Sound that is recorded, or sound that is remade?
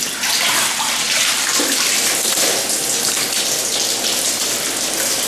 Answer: recorded